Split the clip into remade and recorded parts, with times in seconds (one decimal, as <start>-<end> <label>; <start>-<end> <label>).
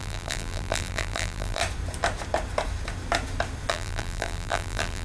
0.0-1.6 remade; 1.6-3.7 recorded; 3.7-5.0 remade